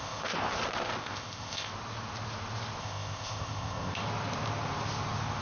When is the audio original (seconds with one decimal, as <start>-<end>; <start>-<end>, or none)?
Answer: 0.5-1.0; 1.7-2.8; 4.0-5.4